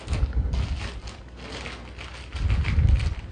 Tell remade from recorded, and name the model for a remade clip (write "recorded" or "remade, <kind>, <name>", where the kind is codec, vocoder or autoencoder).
recorded